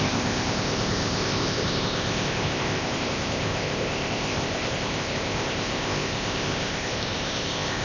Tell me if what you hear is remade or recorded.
remade